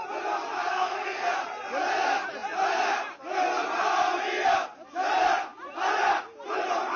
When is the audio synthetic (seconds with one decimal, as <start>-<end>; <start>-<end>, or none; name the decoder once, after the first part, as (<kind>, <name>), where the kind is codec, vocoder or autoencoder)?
0.7-1.2 (codec, SNAC)